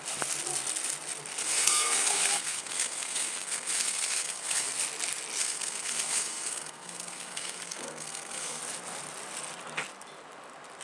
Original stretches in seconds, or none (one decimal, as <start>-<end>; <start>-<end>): 0.0-1.4; 4.7-5.4; 8.6-10.8